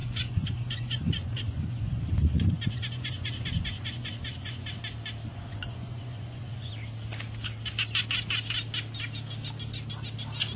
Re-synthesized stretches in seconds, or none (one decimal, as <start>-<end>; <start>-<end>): 0.0-4.8; 5.3-6.7